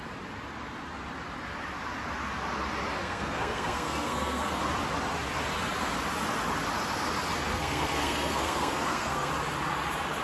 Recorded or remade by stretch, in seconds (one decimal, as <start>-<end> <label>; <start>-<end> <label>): 0.0-3.0 recorded; 3.0-4.6 remade; 4.6-7.5 recorded; 7.5-9.3 remade; 9.3-10.2 recorded